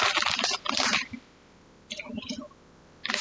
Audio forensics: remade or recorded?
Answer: recorded